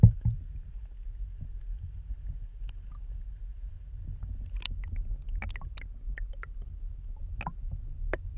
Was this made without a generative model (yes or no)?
yes